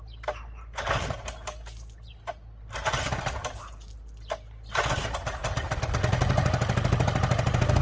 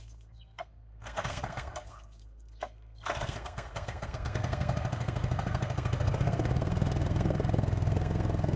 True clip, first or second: first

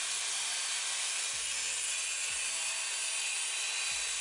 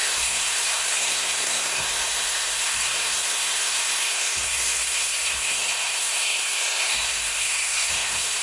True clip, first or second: first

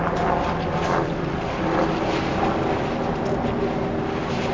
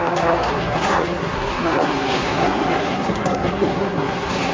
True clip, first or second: first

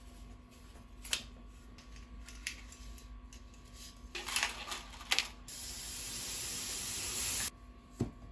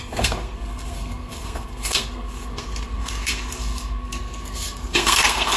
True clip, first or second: first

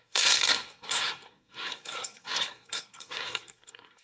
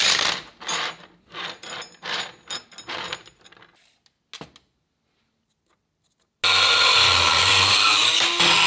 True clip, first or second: second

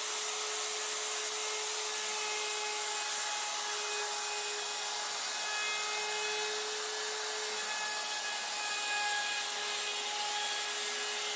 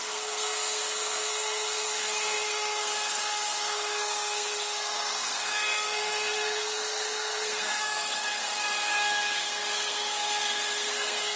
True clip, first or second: first